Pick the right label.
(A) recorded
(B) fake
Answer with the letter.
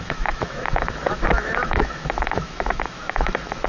B